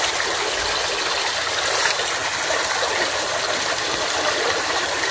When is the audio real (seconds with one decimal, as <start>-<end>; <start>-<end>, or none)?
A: 0.0-5.1